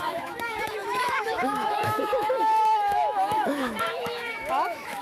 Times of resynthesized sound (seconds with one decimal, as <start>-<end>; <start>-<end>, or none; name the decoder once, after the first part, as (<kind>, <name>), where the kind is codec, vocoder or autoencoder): 0.0-5.0 (autoencoder, DAC-VAE)